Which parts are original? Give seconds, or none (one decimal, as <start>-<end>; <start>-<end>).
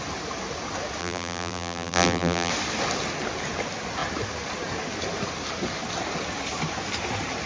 0.0-1.0; 2.5-7.5